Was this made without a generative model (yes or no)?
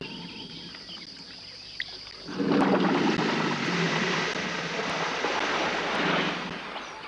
yes